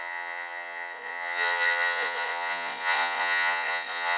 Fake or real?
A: fake